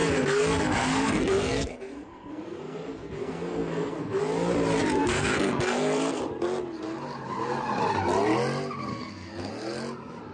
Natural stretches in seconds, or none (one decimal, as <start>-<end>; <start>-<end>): 4.2-5.0; 6.2-8.9; 9.5-10.3